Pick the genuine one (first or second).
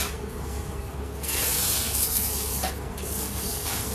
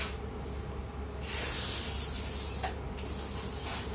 second